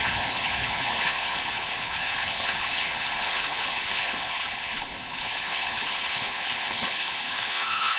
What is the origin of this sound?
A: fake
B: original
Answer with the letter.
A